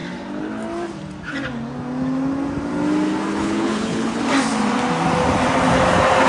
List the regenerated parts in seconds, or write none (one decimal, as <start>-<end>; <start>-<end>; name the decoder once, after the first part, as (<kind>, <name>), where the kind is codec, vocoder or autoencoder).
3.3-4.2 (codec, HILCodec)